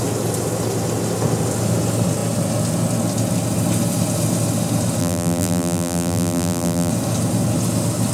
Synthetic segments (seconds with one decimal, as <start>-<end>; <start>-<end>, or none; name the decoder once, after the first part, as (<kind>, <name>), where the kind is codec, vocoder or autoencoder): 5.0-6.9 (vocoder, BigVGAN v2)